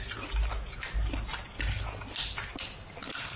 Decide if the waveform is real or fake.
real